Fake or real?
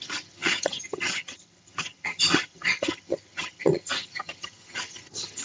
fake